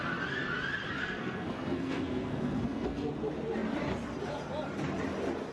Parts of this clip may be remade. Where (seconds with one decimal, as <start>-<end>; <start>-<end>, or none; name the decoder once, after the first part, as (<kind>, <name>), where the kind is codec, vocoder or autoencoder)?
1.0-3.1 (codec, SNAC)